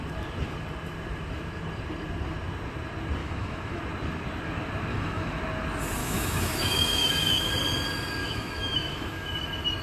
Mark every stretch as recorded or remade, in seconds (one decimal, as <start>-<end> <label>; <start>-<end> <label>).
0.0-3.2 recorded; 3.2-3.8 remade; 3.8-4.9 recorded; 4.9-5.4 remade; 5.4-6.0 recorded; 6.0-7.5 remade; 7.5-8.2 recorded; 8.2-9.4 remade; 9.4-9.8 recorded